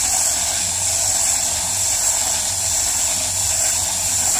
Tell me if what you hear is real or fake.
real